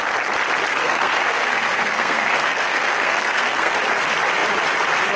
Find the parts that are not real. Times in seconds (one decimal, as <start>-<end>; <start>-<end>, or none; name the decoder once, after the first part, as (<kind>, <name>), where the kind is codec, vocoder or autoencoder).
0.7-3.8 (codec, SNAC)